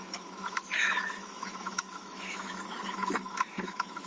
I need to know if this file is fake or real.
fake